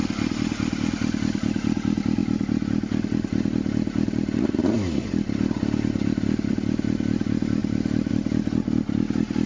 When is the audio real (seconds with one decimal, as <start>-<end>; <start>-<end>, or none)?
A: 0.0-9.5